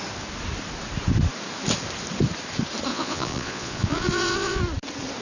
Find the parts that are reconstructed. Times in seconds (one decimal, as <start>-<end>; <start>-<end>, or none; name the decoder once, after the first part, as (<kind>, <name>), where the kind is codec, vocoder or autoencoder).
2.9-4.6 (vocoder, Vocos)